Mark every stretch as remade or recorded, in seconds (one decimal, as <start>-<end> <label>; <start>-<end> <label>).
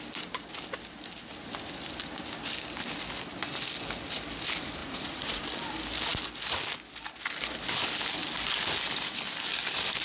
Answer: 0.0-4.8 recorded; 4.8-5.4 remade; 5.4-10.0 recorded